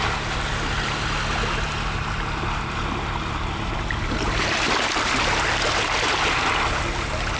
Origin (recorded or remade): recorded